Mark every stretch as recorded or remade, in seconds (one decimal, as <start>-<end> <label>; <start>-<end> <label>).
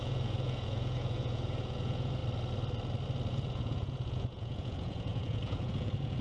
0.0-2.2 remade; 2.2-3.3 recorded; 3.3-6.2 remade